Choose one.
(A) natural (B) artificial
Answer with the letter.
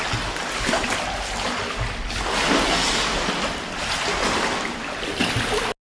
A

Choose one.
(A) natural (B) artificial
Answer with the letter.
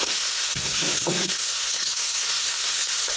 B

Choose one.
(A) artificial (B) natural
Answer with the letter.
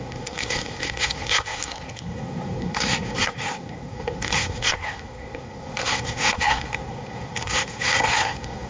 A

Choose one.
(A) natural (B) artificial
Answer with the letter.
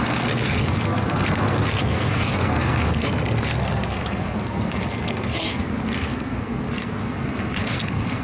B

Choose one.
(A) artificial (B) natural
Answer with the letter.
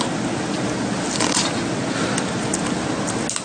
B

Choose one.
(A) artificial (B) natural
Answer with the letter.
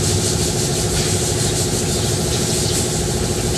B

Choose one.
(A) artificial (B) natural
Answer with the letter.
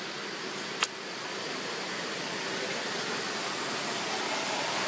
B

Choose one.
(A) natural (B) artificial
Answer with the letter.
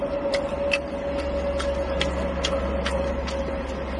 A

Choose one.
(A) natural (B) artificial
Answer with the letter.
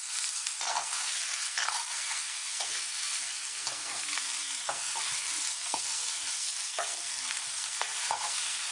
B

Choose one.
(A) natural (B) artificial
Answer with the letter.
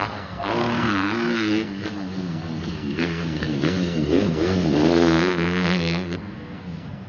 B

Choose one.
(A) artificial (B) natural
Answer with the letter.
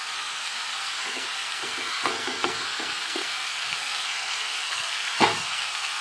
A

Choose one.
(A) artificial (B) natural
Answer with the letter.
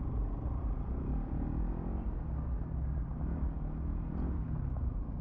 B